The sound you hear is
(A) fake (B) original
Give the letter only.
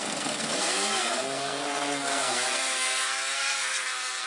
A